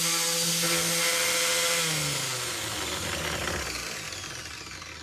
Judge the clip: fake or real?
real